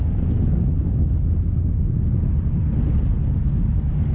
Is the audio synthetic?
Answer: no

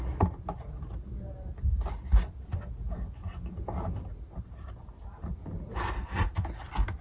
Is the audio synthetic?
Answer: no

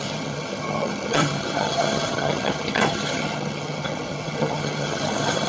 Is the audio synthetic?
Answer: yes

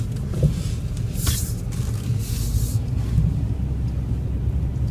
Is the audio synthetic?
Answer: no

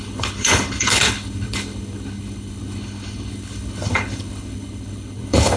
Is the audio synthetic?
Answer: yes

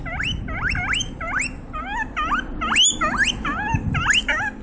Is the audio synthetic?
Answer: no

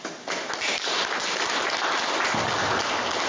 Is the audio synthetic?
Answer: no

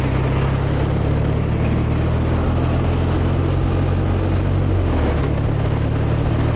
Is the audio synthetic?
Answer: no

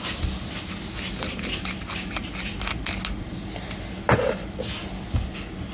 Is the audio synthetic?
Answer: no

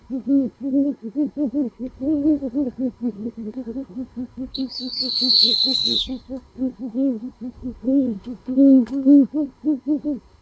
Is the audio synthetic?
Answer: yes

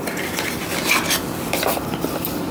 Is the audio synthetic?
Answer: yes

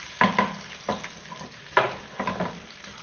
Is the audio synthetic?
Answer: no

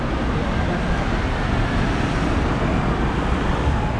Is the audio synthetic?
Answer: no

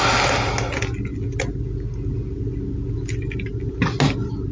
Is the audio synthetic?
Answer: no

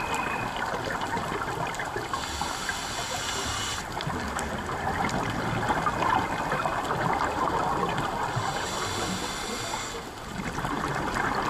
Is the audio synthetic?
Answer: no